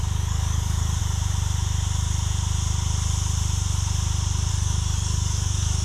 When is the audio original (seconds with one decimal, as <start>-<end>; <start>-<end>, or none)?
1.0-4.5